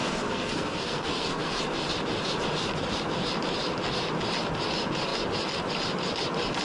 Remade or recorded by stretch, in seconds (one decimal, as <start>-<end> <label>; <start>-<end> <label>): 0.0-1.6 remade; 1.6-6.6 recorded